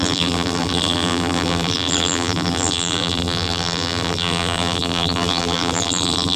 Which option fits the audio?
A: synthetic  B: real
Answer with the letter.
A